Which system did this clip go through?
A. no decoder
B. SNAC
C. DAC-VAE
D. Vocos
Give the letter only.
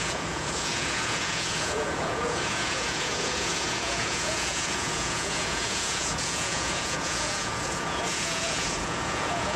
D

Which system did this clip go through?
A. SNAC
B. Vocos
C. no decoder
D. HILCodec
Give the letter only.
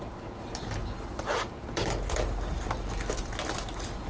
C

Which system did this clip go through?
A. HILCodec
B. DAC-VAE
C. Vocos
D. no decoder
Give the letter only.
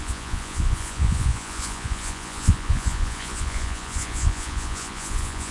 C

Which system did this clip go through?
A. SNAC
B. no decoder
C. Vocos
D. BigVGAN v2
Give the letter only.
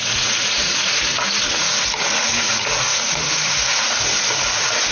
C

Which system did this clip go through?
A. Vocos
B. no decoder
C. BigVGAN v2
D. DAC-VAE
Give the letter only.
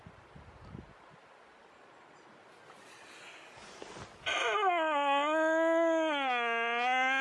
B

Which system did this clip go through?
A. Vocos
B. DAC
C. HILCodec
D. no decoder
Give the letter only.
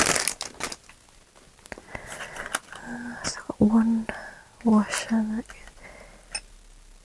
D